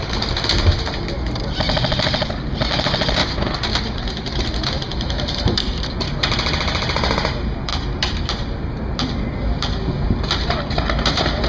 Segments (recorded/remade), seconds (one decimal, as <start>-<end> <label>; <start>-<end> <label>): 0.0-3.2 recorded; 3.2-5.6 remade; 5.6-11.5 recorded